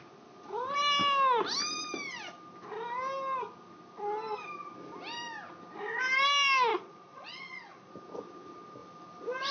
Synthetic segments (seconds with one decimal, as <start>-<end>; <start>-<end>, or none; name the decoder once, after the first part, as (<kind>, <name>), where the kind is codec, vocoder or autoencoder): 6.7-7.9 (vocoder, Vocos)